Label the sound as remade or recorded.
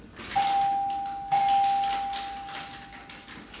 recorded